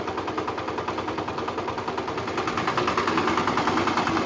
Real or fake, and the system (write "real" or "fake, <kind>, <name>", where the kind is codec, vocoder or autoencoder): real